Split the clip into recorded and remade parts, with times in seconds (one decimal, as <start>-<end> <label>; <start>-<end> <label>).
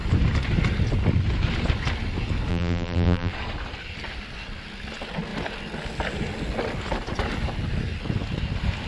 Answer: 0.0-2.5 recorded; 2.5-3.3 remade; 3.3-8.9 recorded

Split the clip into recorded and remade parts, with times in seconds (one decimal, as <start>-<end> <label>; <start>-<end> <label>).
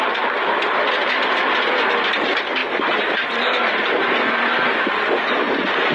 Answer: 0.0-5.9 remade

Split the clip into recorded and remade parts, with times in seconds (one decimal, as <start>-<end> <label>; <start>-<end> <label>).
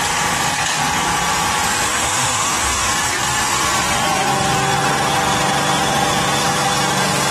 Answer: 0.0-1.9 recorded; 1.9-2.9 remade; 2.9-7.3 recorded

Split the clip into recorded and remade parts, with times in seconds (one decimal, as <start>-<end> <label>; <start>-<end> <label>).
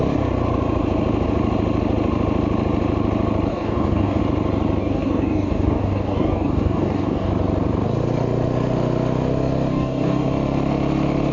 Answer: 0.0-3.5 recorded; 3.5-4.2 remade; 4.2-4.8 recorded; 4.8-7.3 remade; 7.3-9.7 recorded; 9.7-10.3 remade; 10.3-11.3 recorded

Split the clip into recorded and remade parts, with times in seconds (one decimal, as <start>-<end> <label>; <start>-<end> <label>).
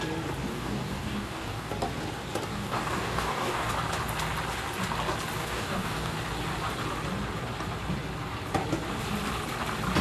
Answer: 0.0-0.5 recorded; 0.5-1.7 remade; 1.7-2.5 recorded; 2.5-3.7 remade; 3.7-5.4 recorded; 5.4-6.1 remade; 6.1-10.0 recorded